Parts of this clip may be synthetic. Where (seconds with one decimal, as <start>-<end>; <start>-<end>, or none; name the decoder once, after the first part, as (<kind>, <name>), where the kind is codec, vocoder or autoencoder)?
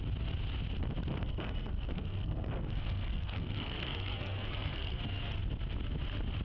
1.2-5.0 (codec, SNAC)